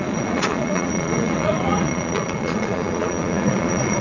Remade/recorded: remade